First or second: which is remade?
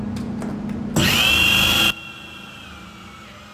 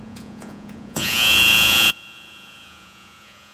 second